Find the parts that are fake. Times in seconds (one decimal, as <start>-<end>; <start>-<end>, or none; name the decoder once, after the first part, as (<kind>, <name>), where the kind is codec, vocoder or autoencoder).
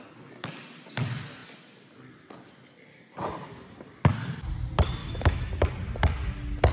5.0-5.5 (autoencoder, DAC-VAE)